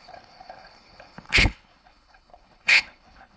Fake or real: fake